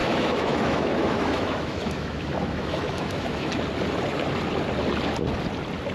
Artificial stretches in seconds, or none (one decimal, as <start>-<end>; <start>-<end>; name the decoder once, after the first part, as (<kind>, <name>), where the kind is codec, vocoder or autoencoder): 0.0-3.5 (autoencoder, DAC-VAE)